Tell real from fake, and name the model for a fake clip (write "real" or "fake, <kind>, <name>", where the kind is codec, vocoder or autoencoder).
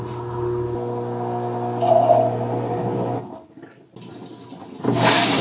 real